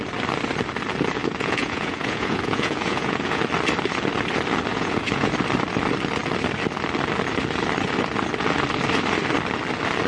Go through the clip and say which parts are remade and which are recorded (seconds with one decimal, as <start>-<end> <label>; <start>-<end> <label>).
0.0-1.2 recorded; 1.2-3.4 remade; 3.4-4.7 recorded; 4.7-5.3 remade; 5.3-10.1 recorded